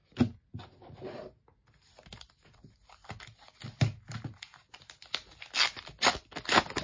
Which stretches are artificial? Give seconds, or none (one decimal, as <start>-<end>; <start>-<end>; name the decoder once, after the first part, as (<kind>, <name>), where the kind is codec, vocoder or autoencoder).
none